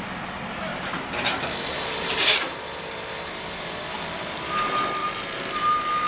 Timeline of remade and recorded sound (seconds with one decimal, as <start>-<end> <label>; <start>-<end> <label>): 0.0-0.7 recorded; 0.7-4.4 remade; 4.4-5.0 recorded; 5.0-6.1 remade